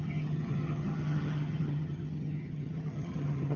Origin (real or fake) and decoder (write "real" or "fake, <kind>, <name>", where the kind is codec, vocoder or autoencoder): fake, vocoder, HiFi-GAN